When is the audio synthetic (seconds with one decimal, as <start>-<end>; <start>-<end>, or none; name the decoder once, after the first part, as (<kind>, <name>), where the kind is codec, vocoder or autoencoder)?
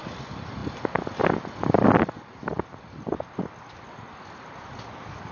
none